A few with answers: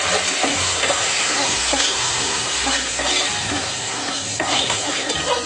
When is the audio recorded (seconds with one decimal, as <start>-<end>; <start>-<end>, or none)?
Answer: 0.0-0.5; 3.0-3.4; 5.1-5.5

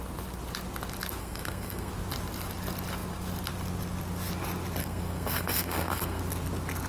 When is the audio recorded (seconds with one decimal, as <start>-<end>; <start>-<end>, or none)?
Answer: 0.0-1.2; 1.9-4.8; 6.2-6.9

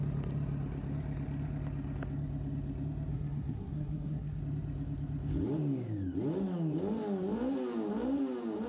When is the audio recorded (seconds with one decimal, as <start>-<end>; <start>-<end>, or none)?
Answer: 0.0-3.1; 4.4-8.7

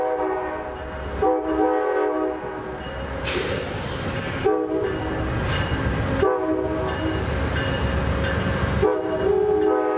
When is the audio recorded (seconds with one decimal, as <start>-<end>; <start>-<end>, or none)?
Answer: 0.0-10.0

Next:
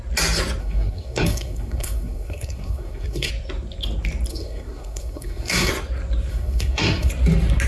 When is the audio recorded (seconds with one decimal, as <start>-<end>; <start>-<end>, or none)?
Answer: 0.0-0.6; 3.3-4.3; 5.7-6.3; 7.1-7.7

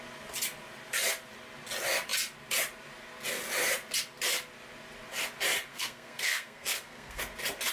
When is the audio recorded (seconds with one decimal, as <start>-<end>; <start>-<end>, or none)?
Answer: 0.0-5.7; 7.2-7.7

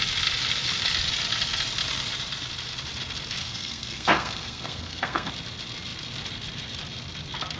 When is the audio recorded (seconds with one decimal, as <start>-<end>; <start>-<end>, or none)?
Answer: 0.0-3.4; 5.3-7.6